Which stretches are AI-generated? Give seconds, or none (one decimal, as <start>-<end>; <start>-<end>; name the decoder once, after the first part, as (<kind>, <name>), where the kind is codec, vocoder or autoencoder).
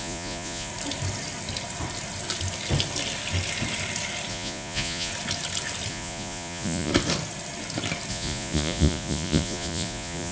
0.0-0.7 (vocoder, Vocos); 4.3-5.1; 5.9-6.9; 8.1-10.3